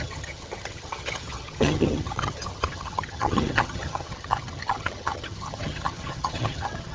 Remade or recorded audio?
remade